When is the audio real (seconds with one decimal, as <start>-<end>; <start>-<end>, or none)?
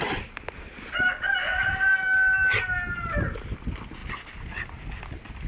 0.0-5.5